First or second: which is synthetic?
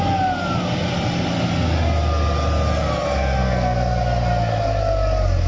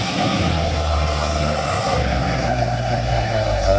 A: second